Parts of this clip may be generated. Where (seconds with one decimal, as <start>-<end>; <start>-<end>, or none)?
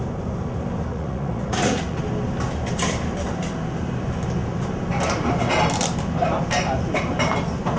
0.9-2.0